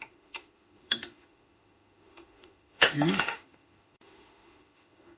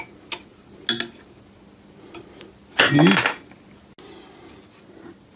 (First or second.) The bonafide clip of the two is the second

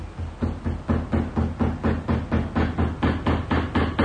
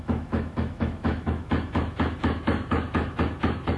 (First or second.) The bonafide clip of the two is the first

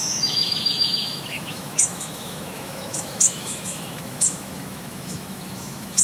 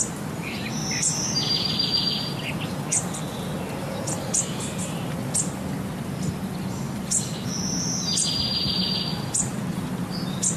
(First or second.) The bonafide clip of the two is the second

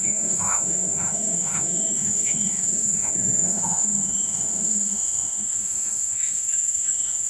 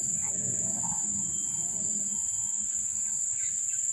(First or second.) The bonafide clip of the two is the second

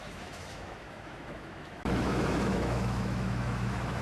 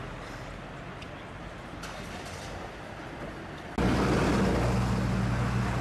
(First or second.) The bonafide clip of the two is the second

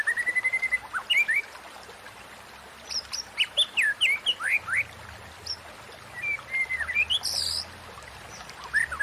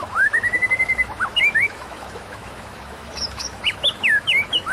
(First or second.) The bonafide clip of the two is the first